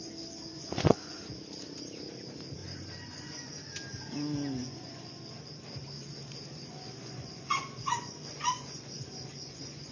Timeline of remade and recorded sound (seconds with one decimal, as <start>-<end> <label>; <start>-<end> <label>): 0.0-0.5 recorded; 0.5-1.2 remade; 1.2-2.6 recorded; 2.6-3.5 remade; 3.5-4.6 recorded; 4.6-5.2 remade; 5.2-6.5 recorded; 6.5-9.9 remade